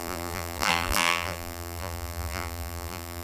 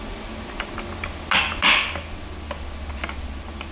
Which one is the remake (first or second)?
first